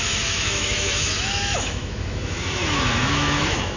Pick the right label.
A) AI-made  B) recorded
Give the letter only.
A